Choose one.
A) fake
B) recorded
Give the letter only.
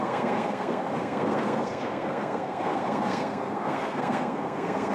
A